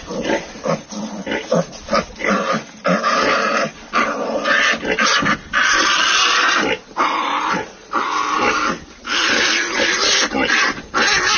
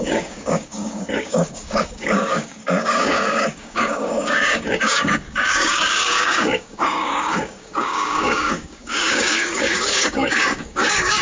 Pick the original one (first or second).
first